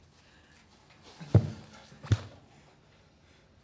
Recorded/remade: recorded